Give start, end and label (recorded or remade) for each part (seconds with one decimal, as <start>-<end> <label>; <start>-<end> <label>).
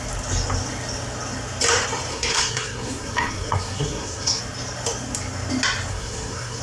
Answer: 0.0-2.1 recorded; 2.1-4.4 remade; 4.4-5.9 recorded; 5.9-6.6 remade